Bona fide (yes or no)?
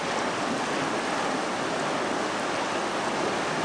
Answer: yes